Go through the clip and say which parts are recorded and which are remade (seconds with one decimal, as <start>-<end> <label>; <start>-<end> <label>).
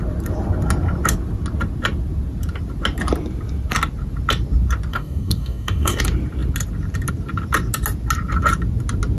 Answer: 0.0-4.9 recorded; 4.9-6.0 remade; 6.0-9.2 recorded